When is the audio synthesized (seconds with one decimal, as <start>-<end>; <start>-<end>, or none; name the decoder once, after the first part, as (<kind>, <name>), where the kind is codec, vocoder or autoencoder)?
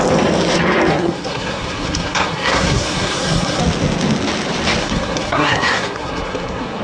0.9-3.6 (codec, SNAC); 4.8-6.8